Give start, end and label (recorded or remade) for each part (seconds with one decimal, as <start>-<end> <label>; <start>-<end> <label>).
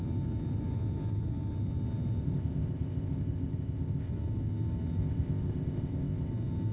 0.0-2.2 recorded; 2.2-4.1 remade; 4.1-5.0 recorded; 5.0-6.3 remade; 6.3-6.7 recorded